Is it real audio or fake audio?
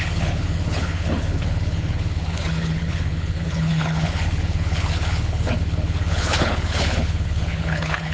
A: fake